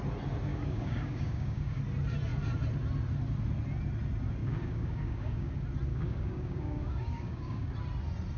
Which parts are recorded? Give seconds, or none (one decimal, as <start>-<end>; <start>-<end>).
0.0-0.5; 1.8-4.4; 5.5-5.9; 7.7-8.4